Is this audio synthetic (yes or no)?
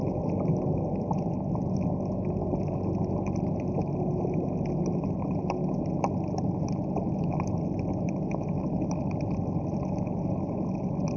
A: no